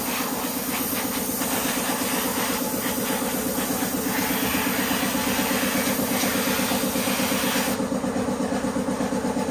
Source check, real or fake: real